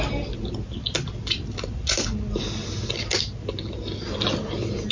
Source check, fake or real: real